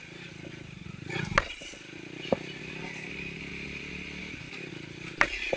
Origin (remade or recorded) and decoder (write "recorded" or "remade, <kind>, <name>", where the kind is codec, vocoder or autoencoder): recorded